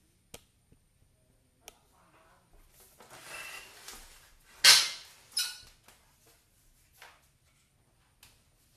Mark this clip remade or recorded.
recorded